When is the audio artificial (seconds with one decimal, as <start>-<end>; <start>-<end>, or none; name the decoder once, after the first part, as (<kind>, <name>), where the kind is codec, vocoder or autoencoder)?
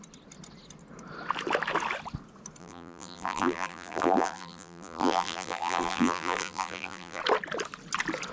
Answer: 2.6-7.2 (vocoder, BigVGAN v2)